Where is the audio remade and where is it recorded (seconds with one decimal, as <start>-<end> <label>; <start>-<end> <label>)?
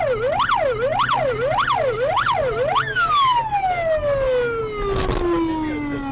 0.0-6.1 recorded